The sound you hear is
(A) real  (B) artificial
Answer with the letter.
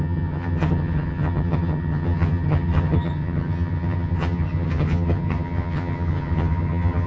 B